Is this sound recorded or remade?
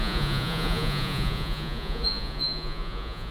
remade